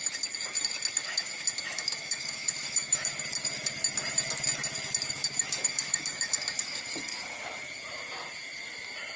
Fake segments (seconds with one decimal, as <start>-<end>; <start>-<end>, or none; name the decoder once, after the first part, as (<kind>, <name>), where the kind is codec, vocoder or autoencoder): 1.0-3.1 (autoencoder, DAC-VAE); 5.2-6.8